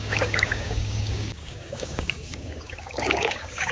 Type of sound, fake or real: fake